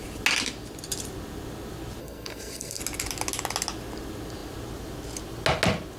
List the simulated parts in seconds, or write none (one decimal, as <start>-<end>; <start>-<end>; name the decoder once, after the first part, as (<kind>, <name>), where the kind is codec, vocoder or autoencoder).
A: 2.0-2.8 (codec, SNAC)